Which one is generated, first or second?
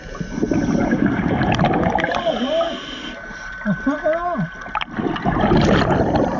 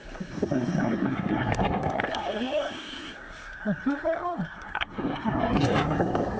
second